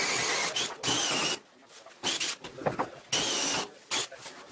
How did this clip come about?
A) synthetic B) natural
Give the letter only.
B